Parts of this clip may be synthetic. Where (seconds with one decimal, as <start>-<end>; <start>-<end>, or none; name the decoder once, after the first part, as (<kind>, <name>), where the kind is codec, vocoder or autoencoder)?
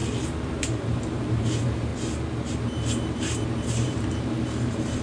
0.5-1.9 (vocoder, BigVGAN v2); 2.5-5.0